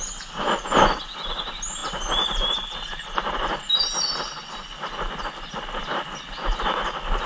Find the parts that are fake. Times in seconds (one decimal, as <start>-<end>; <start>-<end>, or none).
none